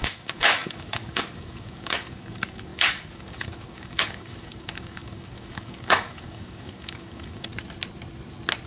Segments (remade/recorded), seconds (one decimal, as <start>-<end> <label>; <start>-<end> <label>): 0.0-7.5 remade; 7.5-8.7 recorded